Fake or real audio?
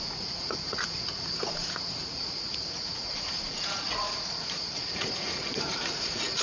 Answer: fake